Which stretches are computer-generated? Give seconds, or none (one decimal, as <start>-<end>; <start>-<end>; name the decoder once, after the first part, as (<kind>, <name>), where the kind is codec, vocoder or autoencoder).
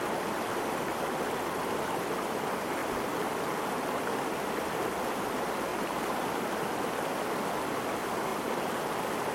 2.8-3.5 (vocoder, BigVGAN v2); 5.7-7.1; 8.3-8.9